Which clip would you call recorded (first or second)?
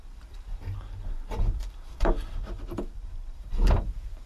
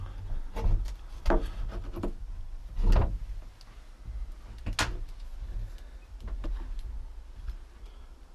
second